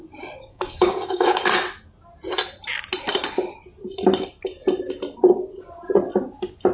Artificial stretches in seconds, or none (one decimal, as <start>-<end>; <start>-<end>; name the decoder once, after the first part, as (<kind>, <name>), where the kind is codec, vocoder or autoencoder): 0.5-1.4 (codec, DAC)